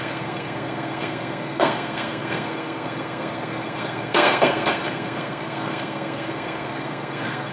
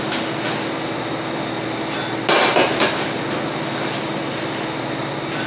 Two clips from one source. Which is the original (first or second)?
second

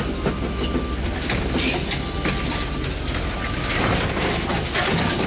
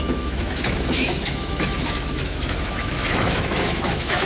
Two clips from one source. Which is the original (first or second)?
first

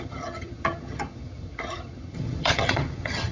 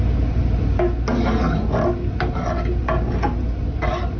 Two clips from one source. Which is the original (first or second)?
second